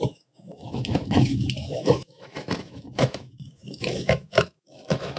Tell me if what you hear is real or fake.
fake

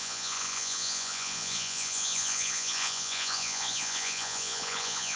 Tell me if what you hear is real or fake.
fake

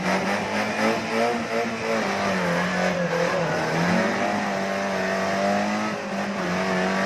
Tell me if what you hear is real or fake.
real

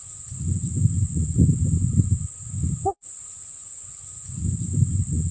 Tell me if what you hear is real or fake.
fake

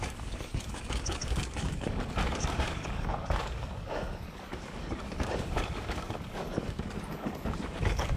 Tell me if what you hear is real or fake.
fake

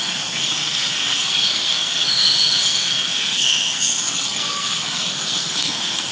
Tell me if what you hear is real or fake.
fake